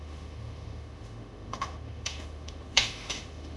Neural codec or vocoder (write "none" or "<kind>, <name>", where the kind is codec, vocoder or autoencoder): autoencoder, DAC-VAE